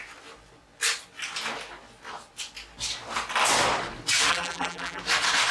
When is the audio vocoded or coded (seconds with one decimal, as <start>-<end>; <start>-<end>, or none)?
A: 4.3-5.0